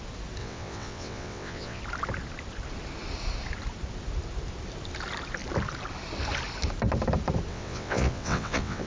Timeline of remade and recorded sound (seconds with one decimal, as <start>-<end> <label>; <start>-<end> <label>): 0.0-0.4 recorded; 0.4-1.8 remade; 1.8-7.5 recorded; 7.5-8.9 remade